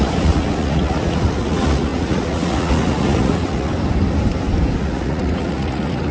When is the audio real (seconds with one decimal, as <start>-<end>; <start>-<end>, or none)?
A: 3.7-4.8